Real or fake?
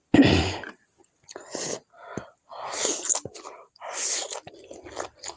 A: real